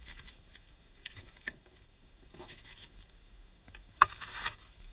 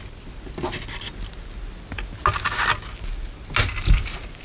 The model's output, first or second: first